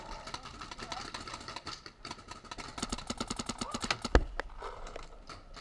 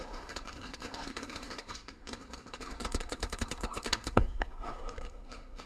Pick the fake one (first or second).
second